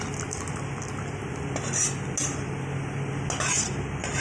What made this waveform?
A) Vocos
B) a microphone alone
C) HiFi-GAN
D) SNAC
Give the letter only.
B